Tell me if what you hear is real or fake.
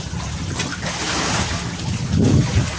real